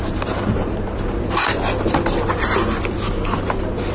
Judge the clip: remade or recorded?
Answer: recorded